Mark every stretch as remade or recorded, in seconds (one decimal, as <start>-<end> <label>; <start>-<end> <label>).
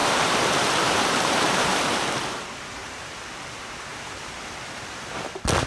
0.0-1.8 remade; 1.8-2.8 recorded; 2.8-3.4 remade; 3.4-3.9 recorded; 3.9-5.7 remade